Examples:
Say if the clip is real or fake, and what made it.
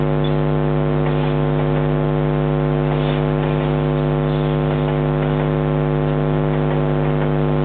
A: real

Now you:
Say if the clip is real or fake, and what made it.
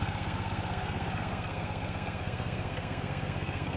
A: fake, codec, SNAC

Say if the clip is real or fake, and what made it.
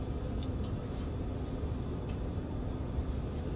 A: real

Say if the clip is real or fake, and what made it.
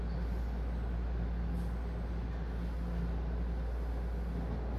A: real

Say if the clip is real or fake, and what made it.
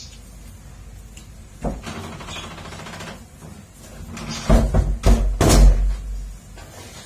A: real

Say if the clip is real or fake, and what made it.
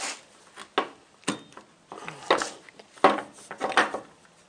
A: real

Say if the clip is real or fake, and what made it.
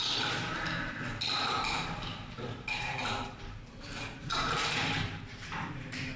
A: real